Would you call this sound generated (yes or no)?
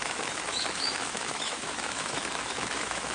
yes